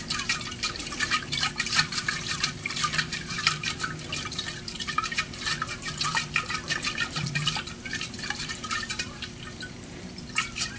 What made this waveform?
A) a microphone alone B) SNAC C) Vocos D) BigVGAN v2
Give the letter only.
D